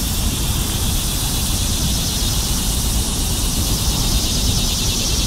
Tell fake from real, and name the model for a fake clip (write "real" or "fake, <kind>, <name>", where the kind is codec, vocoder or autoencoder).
fake, vocoder, BigVGAN v2